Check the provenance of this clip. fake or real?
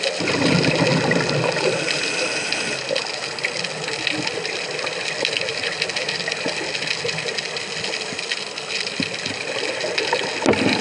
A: real